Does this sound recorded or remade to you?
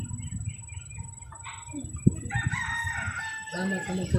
recorded